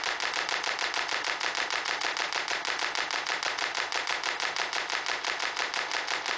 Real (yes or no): yes